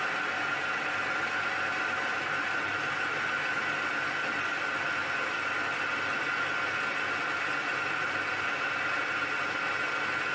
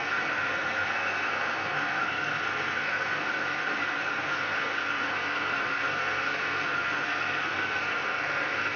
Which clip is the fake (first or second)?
second